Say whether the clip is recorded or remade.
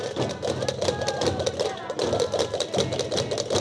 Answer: recorded